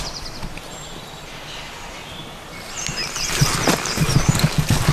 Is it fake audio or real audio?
real